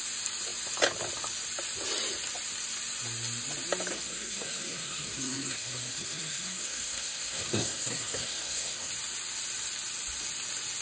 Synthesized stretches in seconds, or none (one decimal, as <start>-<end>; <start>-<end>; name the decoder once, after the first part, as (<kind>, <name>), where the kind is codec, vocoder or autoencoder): 3.9-8.9 (codec, SNAC)